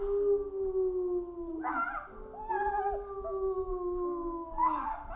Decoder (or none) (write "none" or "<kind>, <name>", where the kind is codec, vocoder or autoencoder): none